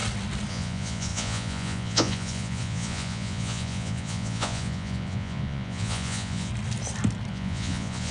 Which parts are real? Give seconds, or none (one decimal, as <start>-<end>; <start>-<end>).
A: 0.0-0.5; 6.5-7.3